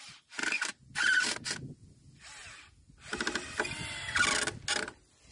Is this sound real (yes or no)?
yes